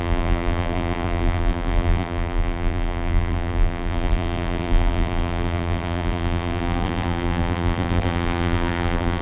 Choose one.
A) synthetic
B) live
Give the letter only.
A